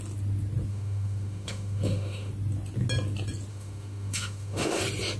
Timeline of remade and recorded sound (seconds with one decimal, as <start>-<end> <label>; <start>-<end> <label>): 0.0-0.7 recorded; 0.7-2.3 remade; 2.3-3.5 recorded; 3.5-4.8 remade; 4.8-5.2 recorded